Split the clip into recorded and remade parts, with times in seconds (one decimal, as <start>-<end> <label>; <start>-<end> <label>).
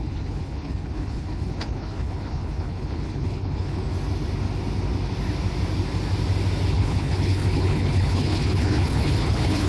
0.0-3.8 remade; 3.8-6.7 recorded; 6.7-9.7 remade